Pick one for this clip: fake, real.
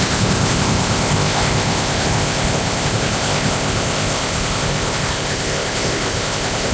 fake